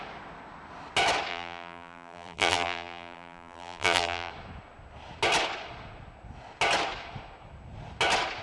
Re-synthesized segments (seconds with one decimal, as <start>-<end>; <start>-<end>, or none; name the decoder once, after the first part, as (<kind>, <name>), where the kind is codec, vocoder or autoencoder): 1.3-4.3 (vocoder, BigVGAN v2)